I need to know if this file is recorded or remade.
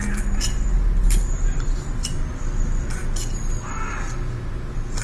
recorded